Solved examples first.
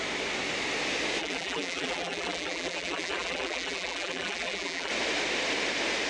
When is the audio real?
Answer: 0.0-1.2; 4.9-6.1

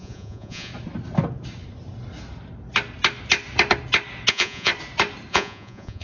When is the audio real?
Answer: 0.7-4.3; 4.7-5.3

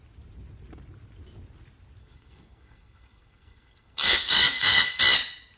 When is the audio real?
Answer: 0.0-2.0; 5.0-5.6